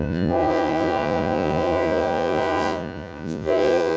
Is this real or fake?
fake